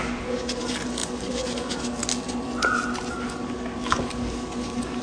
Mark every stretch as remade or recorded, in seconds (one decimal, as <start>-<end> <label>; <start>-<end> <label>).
0.0-2.1 remade; 2.1-3.1 recorded; 3.1-5.0 remade